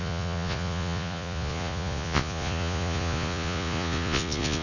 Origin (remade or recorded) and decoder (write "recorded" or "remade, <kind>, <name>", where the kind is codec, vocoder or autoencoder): remade, vocoder, Vocos